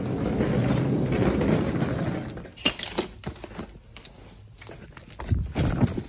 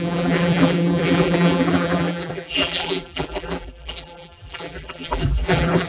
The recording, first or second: first